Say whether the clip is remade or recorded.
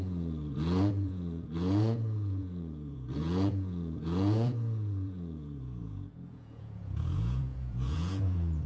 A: remade